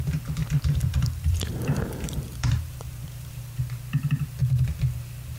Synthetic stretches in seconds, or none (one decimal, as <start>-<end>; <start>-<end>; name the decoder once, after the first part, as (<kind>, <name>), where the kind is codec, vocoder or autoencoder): 0.4-3.6 (vocoder, BigVGAN v2)